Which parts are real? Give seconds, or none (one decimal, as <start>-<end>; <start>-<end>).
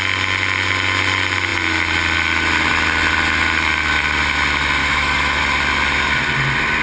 0.0-4.8; 5.4-6.8